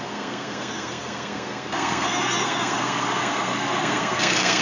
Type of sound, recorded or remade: remade